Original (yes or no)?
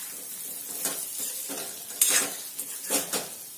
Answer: yes